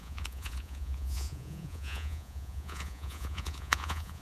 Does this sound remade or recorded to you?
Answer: remade